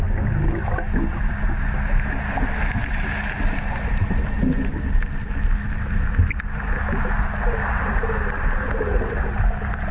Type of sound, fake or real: real